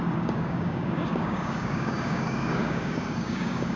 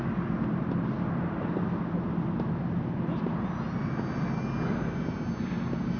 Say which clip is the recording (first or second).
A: second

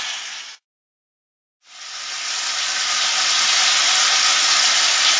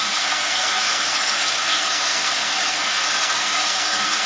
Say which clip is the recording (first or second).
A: first